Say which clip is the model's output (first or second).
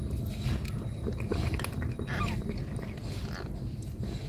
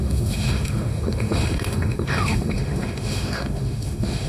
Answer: second